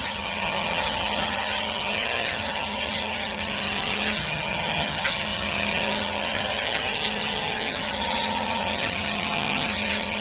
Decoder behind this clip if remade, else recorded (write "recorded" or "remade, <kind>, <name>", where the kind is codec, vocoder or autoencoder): remade, vocoder, HiFi-GAN